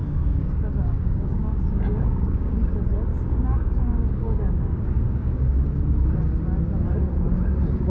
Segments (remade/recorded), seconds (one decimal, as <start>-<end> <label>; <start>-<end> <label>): 0.0-2.6 remade; 2.6-3.1 recorded; 3.1-5.8 remade; 5.8-7.9 recorded

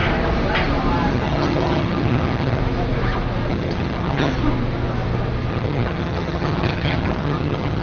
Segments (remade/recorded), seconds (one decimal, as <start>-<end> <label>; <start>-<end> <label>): 0.0-1.1 recorded; 1.1-2.6 remade; 2.6-3.5 recorded; 3.5-4.3 remade; 4.3-5.5 recorded; 5.5-7.8 remade